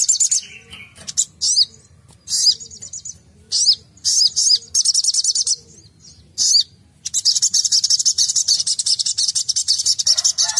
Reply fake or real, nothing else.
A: real